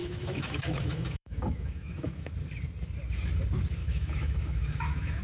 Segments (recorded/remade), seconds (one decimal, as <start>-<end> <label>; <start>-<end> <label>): 0.0-2.3 remade; 2.3-3.8 recorded; 3.8-5.2 remade

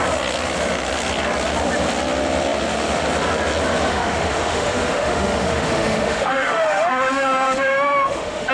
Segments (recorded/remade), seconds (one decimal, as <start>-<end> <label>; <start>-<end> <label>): 0.0-3.9 recorded; 3.9-8.5 remade

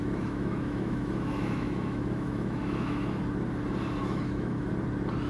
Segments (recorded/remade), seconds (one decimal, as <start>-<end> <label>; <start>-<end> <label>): 0.0-3.2 remade; 3.2-4.0 recorded; 4.0-4.7 remade; 4.7-5.3 recorded

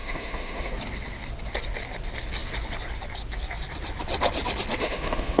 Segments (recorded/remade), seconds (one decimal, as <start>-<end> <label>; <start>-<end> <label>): 0.0-0.7 remade; 0.7-4.8 recorded; 4.8-5.4 remade

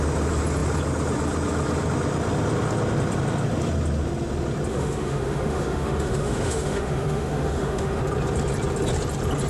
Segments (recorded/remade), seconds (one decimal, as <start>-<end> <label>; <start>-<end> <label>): 0.0-4.7 recorded; 4.7-8.0 remade; 8.0-9.5 recorded